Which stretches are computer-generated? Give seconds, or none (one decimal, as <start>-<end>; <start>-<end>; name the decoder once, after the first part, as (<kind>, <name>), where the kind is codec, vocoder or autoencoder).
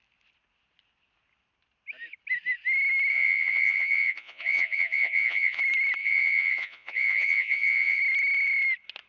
3.1-5.6 (vocoder, Vocos); 6.0-8.0